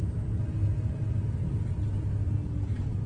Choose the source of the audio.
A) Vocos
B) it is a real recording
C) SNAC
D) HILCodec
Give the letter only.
B